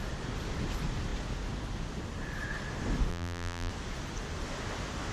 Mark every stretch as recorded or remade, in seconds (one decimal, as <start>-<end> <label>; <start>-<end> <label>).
0.0-3.1 recorded; 3.1-3.7 remade; 3.7-5.1 recorded